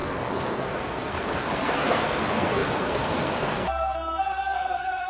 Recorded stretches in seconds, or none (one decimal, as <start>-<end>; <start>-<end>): none